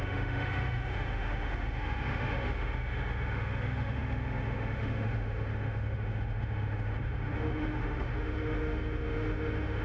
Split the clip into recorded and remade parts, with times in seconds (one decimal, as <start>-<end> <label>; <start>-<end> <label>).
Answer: 0.0-9.8 remade